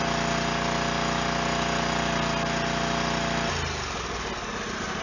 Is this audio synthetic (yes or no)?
no